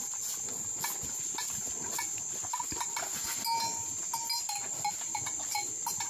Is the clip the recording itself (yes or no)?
yes